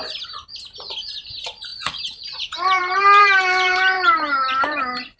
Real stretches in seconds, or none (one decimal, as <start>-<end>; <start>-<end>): 0.0-1.7; 4.8-5.2